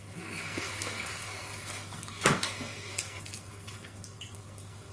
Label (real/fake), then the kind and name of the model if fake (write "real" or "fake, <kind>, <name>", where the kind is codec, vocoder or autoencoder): fake, codec, SNAC